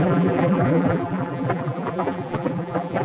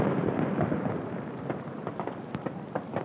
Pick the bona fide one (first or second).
second